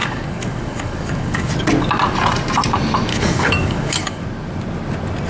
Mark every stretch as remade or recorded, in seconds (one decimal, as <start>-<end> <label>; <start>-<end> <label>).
0.0-1.5 remade; 1.5-3.1 recorded; 3.1-4.2 remade; 4.2-5.3 recorded